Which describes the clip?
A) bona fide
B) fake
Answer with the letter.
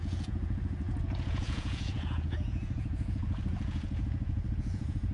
B